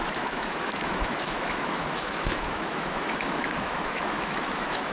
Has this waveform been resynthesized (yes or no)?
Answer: yes